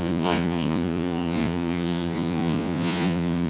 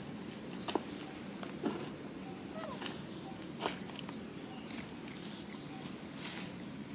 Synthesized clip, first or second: first